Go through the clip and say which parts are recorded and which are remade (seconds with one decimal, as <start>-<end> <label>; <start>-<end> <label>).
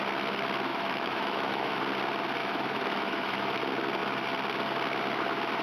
0.0-0.7 recorded; 0.7-1.8 remade; 1.8-2.4 recorded; 2.4-3.6 remade; 3.6-5.6 recorded